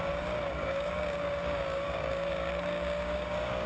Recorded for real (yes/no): no